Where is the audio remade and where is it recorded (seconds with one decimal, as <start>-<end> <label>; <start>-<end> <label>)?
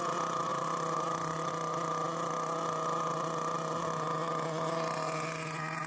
0.0-0.5 recorded; 0.5-1.5 remade; 1.5-5.9 recorded